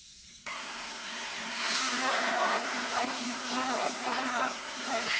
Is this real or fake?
fake